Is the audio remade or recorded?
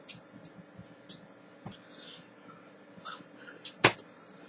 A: recorded